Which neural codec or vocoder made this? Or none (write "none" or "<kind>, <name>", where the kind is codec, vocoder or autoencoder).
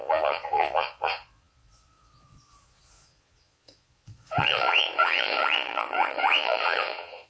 vocoder, Vocos